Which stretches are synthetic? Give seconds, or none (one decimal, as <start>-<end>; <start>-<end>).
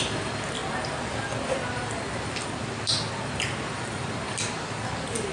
none